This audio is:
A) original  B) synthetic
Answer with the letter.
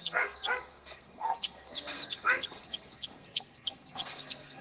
B